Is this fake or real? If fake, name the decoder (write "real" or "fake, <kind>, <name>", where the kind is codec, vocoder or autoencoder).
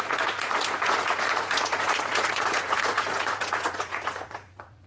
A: fake, vocoder, Vocos